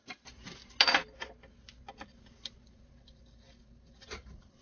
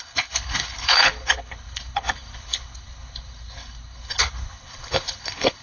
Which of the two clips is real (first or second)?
first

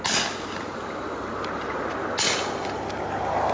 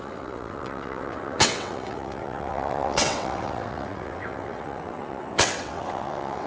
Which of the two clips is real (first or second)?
first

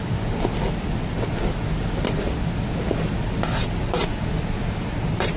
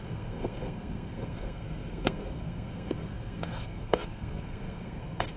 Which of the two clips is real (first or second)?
first